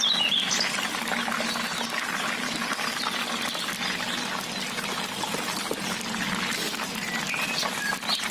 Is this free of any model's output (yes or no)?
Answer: yes